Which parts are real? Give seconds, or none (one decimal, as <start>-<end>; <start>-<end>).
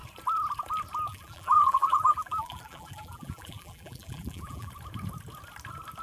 0.0-1.1; 4.7-6.0